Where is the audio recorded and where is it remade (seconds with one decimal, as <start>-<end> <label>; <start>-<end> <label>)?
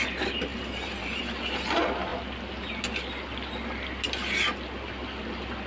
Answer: 0.0-0.5 recorded; 0.5-1.2 remade; 1.2-5.7 recorded